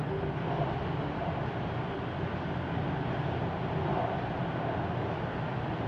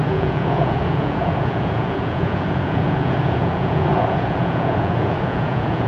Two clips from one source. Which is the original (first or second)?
first